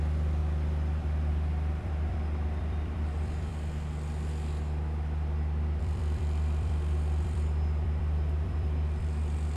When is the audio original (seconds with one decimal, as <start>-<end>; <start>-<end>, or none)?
3.5-5.8